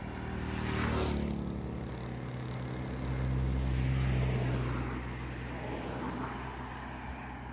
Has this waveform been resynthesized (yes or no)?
no